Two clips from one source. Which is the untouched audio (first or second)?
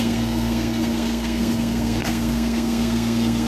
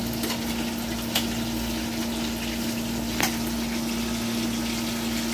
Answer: second